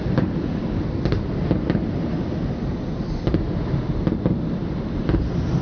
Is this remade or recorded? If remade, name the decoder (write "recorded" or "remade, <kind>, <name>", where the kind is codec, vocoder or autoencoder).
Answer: recorded